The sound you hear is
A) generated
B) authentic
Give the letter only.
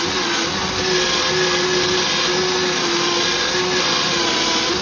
B